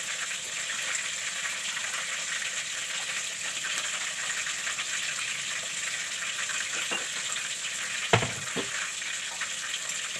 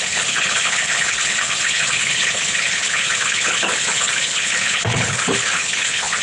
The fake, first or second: second